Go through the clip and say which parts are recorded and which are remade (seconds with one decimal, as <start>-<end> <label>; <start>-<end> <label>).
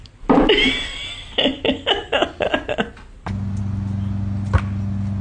0.0-5.2 recorded